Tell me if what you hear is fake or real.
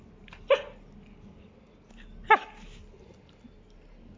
real